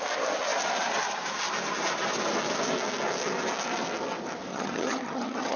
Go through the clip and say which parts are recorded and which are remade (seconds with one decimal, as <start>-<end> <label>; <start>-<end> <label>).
0.0-4.5 recorded; 4.5-5.6 remade